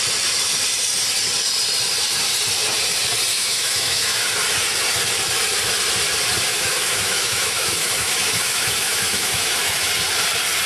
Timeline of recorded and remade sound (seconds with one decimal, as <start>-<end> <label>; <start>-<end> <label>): 0.0-3.3 recorded; 3.3-4.2 remade; 4.2-6.5 recorded; 6.5-9.9 remade; 9.9-10.7 recorded